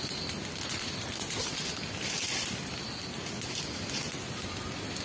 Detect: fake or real real